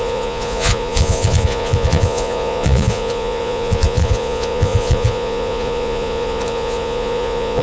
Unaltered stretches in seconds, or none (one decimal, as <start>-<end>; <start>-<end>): none